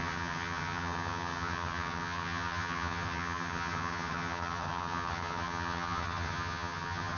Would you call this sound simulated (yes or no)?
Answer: yes